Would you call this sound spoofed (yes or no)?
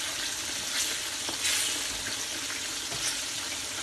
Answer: no